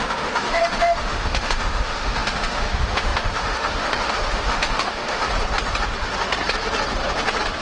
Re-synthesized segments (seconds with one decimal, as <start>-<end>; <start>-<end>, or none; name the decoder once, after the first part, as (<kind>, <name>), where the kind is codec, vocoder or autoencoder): 0.0-5.2 (autoencoder, DAC-VAE)